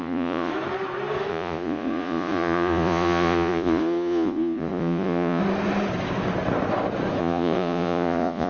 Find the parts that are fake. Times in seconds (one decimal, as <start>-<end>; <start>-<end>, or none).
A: 0.0-0.5; 1.3-5.4; 7.2-8.5